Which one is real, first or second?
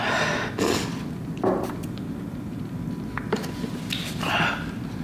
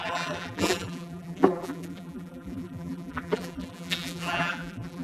first